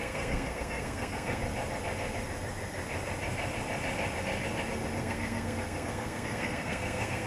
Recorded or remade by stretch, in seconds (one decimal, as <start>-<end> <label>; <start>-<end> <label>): 0.0-1.4 remade; 1.4-5.0 recorded; 5.0-7.3 remade